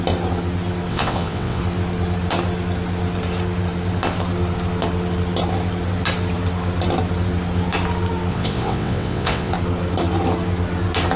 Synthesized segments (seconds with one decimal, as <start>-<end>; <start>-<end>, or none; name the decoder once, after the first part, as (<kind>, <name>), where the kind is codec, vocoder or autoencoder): 0.9-1.6 (vocoder, WaveNeXt); 8.3-9.5